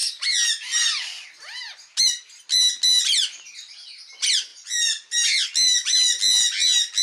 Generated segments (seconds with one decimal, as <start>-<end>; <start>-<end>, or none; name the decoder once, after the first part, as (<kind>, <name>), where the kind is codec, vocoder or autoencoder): none